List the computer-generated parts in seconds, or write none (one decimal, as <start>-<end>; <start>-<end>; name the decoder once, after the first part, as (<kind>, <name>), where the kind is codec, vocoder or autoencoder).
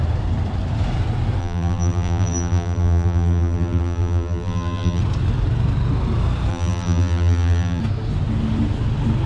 1.4-5.0 (vocoder, BigVGAN v2); 6.5-7.8